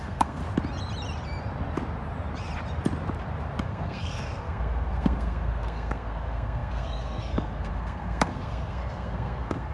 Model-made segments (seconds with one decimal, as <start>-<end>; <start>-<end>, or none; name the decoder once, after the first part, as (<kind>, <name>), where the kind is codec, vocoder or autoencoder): 0.0-0.4 (codec, SNAC); 3.6-9.7